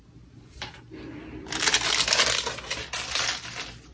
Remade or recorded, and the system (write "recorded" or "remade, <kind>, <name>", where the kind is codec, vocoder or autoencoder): recorded